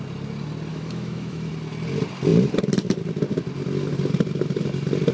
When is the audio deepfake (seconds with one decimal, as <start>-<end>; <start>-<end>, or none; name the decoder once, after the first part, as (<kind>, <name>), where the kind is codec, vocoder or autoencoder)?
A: 0.7-1.5 (autoencoder, DAC-VAE)